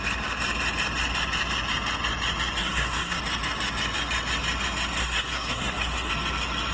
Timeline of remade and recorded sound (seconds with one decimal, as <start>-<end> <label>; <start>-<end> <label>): 0.0-2.6 recorded; 2.6-3.2 remade; 3.2-5.0 recorded; 5.0-6.1 remade; 6.1-6.7 recorded

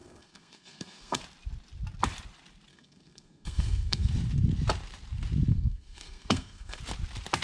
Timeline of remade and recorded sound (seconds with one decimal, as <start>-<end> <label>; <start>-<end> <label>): 0.0-1.2 remade; 1.2-2.7 recorded; 2.7-4.1 remade; 4.1-5.5 recorded; 5.5-6.8 remade; 6.8-7.4 recorded

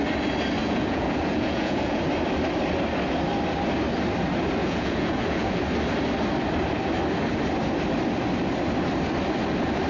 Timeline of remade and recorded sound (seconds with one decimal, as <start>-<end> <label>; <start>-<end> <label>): 0.0-0.6 recorded; 0.6-2.0 remade; 2.0-4.6 recorded; 4.6-5.6 remade; 5.6-9.9 recorded

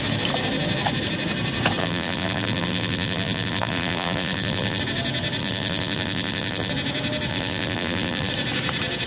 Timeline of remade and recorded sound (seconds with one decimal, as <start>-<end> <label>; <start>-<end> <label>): 0.0-1.8 recorded; 1.8-4.8 remade; 4.8-5.4 recorded; 5.4-6.7 remade; 6.7-7.3 recorded; 7.3-8.3 remade; 8.3-9.1 recorded

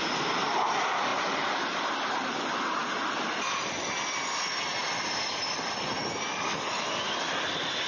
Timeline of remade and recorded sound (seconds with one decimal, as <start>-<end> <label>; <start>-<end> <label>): 0.0-7.9 recorded

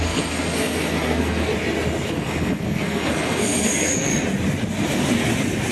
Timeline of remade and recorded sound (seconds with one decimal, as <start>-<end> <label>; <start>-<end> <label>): 0.0-1.5 remade; 1.5-2.1 recorded; 2.1-4.1 remade; 4.1-5.7 recorded